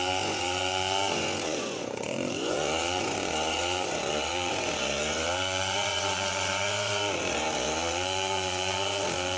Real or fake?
fake